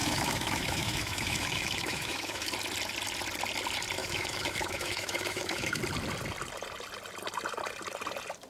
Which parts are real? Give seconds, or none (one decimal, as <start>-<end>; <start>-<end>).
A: 2.5-4.0; 5.8-8.5